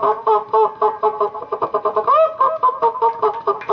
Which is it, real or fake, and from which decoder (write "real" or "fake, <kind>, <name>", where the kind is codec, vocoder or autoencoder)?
real